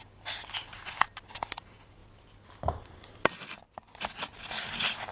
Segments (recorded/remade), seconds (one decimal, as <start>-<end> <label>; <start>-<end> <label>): 0.0-5.1 recorded